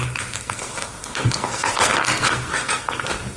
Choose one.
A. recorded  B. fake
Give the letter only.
B